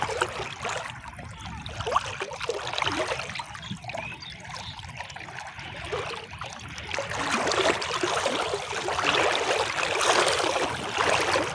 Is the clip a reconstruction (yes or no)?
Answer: no